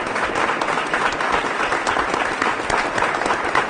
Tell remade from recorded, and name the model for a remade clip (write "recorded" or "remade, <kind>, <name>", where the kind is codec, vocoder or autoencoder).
recorded